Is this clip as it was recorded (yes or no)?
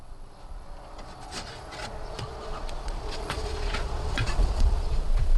no